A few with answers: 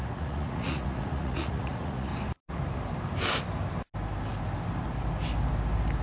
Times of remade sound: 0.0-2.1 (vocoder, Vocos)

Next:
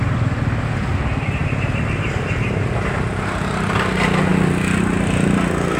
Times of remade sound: none

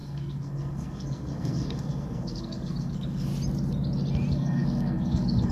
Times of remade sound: 0.0-3.3 (codec, SNAC); 4.3-5.5

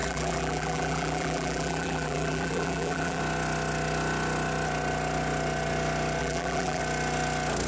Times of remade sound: 0.0-3.2 (vocoder, BigVGAN v2); 6.2-6.8

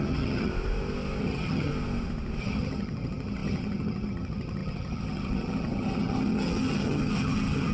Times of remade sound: 0.0-0.5 (vocoder, HiFi-GAN); 1.2-1.7; 2.4-7.7